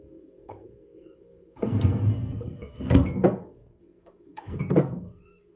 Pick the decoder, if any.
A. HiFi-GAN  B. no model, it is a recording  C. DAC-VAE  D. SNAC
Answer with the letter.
D